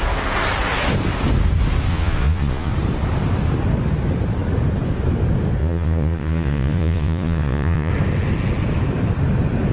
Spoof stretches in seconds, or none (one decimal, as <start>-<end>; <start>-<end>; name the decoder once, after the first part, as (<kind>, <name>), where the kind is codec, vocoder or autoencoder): 1.9-2.7 (vocoder, Vocos); 5.6-7.9